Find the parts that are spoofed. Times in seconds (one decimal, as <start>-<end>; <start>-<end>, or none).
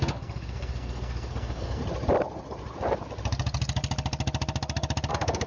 0.0-1.8; 5.1-5.5